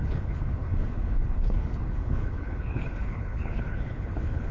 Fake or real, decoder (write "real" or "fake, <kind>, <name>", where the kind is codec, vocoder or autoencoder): fake, codec, HILCodec